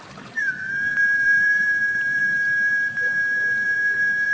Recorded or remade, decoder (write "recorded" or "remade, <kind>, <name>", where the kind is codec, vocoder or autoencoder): remade, vocoder, BigVGAN v2